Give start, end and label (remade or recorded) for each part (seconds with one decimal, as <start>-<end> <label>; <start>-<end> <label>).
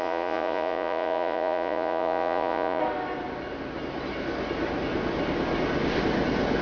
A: 0.0-2.8 remade; 2.8-6.6 recorded